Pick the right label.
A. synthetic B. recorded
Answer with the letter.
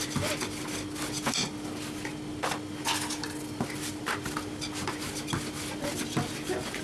B